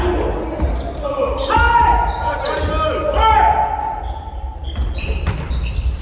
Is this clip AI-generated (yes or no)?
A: no